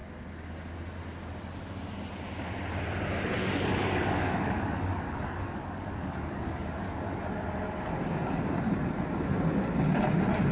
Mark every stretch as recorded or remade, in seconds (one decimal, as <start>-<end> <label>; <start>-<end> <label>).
0.0-3.4 recorded; 3.4-7.3 remade; 7.3-10.5 recorded